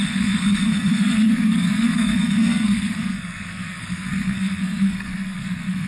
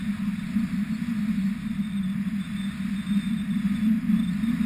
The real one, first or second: second